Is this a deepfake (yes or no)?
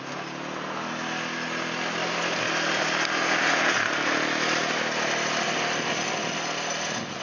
no